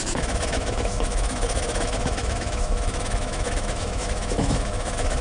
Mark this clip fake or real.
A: fake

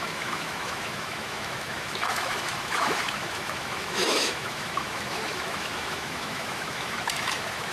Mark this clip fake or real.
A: fake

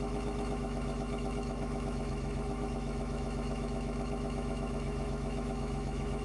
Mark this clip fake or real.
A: fake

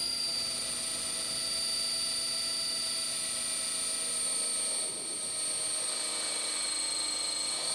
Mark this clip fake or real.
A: real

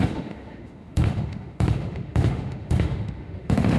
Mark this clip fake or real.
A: fake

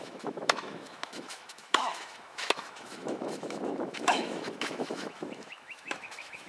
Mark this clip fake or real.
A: fake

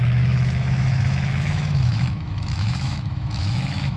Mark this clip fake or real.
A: fake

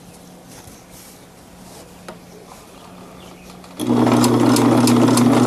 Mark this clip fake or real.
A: real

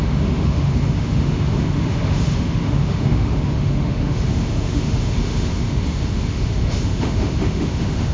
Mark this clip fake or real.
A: fake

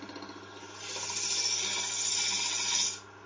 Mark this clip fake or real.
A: real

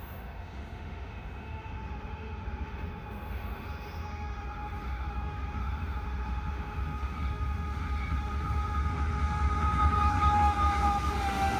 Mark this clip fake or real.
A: fake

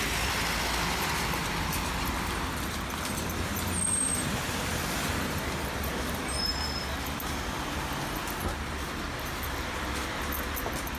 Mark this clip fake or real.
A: real